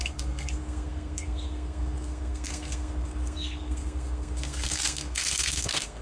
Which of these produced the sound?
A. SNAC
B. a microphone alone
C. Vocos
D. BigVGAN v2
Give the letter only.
A